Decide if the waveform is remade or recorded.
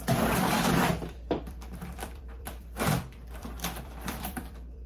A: remade